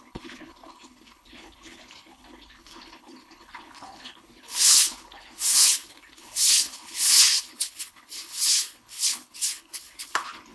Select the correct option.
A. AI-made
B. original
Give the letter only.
A